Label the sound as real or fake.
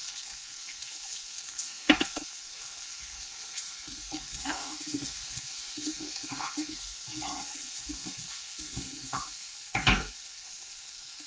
fake